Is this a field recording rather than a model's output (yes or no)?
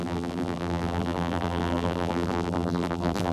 no